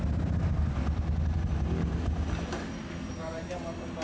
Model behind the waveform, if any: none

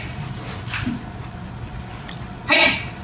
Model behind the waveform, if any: none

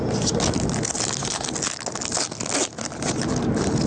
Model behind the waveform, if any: none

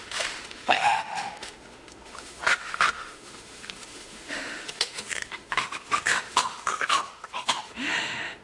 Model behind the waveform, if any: autoencoder, DAC-VAE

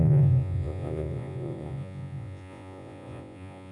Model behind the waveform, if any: vocoder, Vocos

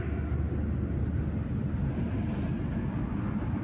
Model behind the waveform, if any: none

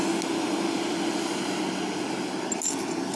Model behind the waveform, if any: none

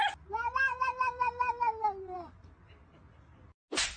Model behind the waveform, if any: none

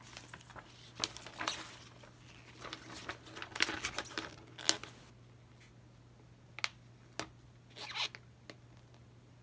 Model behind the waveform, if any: none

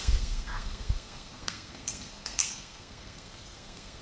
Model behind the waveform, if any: codec, SNAC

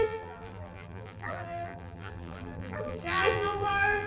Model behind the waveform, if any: vocoder, BigVGAN v2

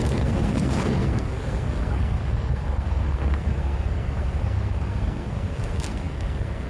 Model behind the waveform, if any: codec, SNAC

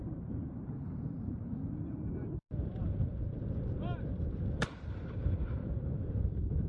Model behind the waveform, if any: vocoder, BigVGAN v2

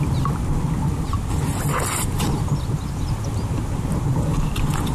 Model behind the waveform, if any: none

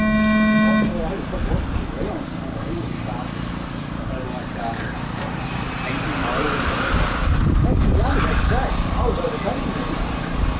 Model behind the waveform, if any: none